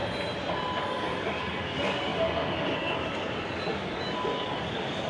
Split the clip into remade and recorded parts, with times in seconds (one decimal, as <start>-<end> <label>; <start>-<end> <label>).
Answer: 0.0-0.8 recorded; 0.8-5.1 remade